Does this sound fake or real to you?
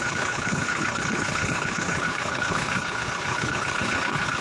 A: fake